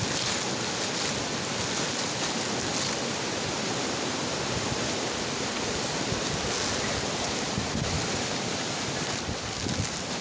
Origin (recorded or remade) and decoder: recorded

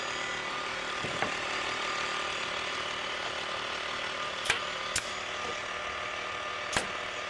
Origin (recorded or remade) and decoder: recorded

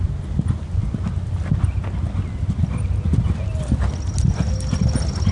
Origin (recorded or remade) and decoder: recorded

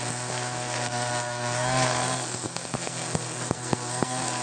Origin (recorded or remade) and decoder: remade, codec, SNAC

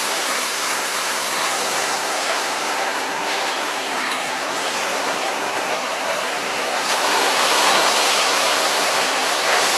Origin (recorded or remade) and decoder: remade, codec, SNAC